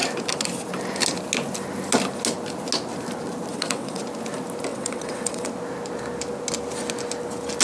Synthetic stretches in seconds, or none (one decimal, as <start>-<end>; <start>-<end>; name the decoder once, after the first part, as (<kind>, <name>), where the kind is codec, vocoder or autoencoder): 3.5-4.0 (vocoder, WaveNeXt); 4.7-5.5